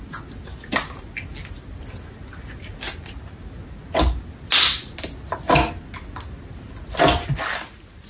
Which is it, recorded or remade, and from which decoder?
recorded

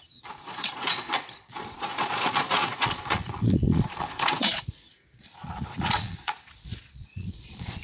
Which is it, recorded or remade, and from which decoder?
remade, vocoder, Vocos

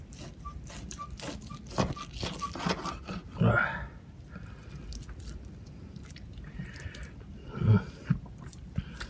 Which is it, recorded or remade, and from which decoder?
recorded